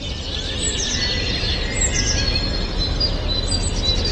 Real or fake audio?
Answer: real